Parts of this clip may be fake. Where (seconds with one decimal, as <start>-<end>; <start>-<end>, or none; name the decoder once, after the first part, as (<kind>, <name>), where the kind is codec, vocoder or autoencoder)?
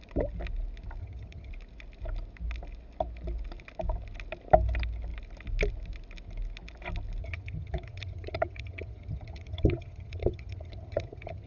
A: 1.0-1.5 (vocoder, HiFi-GAN); 7.2-11.5